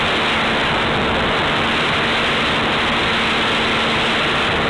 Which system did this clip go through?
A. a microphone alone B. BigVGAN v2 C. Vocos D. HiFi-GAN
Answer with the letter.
A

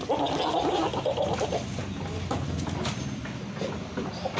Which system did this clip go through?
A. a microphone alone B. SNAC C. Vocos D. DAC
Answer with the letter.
A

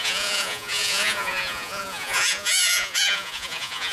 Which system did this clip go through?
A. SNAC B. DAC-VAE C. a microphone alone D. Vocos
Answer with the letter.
D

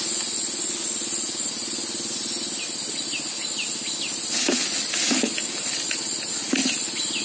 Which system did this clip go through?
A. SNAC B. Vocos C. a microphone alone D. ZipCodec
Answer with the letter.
C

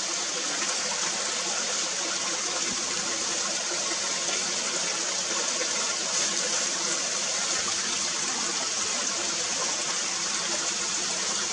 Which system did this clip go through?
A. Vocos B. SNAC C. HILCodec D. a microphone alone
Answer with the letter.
D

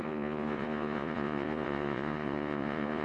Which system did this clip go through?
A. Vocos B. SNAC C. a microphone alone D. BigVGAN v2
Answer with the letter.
A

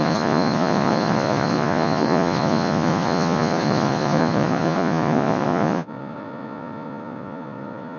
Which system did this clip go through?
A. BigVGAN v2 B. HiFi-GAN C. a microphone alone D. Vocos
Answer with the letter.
D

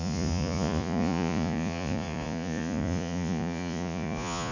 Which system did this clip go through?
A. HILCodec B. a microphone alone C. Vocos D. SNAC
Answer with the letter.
C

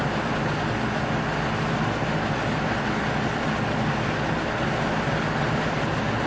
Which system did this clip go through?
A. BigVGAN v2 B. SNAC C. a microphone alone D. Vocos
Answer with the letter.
C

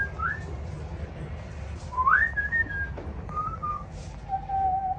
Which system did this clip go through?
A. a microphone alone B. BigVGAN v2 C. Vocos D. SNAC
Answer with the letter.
A